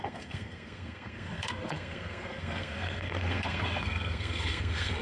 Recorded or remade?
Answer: remade